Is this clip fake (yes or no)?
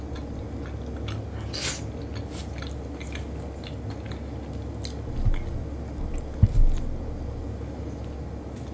no